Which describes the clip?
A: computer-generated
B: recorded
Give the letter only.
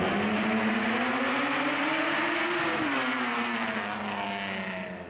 B